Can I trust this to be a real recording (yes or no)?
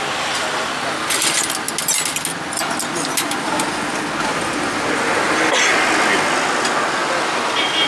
yes